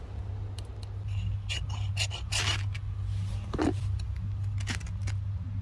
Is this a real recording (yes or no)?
yes